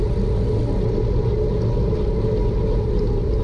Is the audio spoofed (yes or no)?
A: no